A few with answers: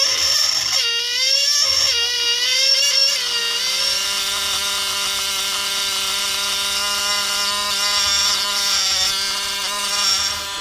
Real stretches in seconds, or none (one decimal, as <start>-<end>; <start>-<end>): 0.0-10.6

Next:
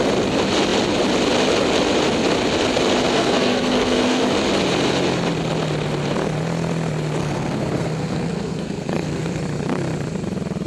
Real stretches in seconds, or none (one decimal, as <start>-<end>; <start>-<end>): 0.0-3.1; 4.2-7.2; 9.4-10.7

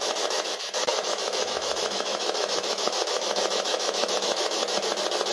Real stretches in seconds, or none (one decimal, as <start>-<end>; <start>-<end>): 4.6-5.3

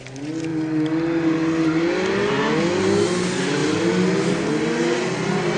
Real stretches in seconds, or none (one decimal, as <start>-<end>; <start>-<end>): 0.0-5.6